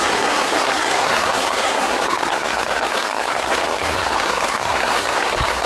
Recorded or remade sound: remade